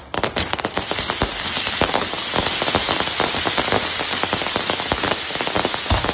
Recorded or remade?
recorded